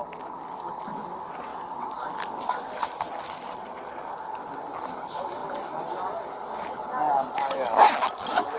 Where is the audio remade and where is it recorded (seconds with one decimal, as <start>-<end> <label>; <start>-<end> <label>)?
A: 0.0-8.6 recorded